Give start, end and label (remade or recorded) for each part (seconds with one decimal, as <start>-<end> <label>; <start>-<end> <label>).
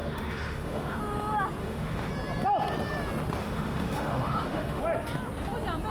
0.0-1.0 remade; 1.0-1.6 recorded; 1.6-2.1 remade; 2.1-3.4 recorded; 3.4-4.8 remade; 4.8-5.9 recorded